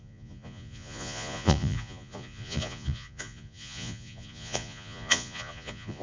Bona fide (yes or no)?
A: no